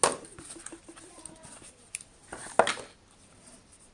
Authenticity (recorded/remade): recorded